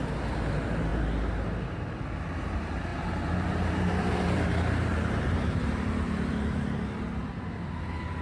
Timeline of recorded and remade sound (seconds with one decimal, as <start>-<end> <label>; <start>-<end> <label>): 0.0-2.9 recorded; 2.9-7.5 remade; 7.5-8.2 recorded